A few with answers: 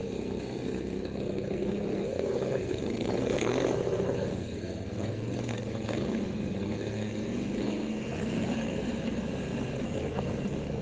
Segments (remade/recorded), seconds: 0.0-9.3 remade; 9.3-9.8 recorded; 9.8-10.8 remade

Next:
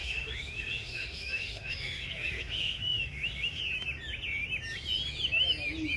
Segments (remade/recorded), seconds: 0.0-3.6 remade; 3.6-6.0 recorded

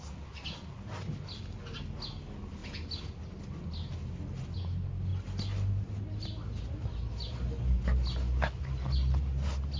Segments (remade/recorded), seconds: 0.0-9.8 recorded